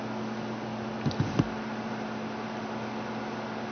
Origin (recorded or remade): recorded